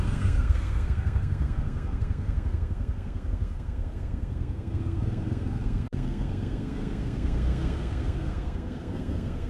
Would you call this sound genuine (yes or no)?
no